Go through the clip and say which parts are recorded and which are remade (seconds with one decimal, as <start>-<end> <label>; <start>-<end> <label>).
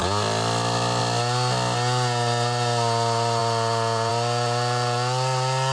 0.0-5.7 recorded